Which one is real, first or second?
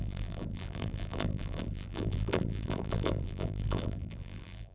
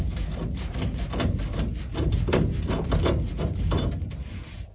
second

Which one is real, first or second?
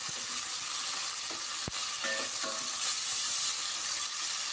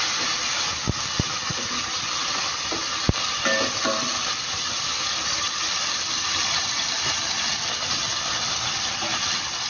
first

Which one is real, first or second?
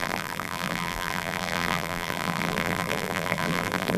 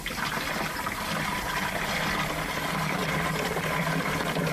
second